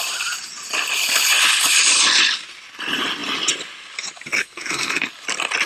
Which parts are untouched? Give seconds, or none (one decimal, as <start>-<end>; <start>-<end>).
0.0-4.4; 5.1-5.7